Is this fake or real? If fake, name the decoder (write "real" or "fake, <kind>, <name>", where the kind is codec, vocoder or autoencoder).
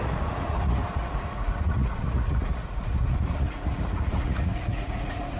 fake, vocoder, Vocos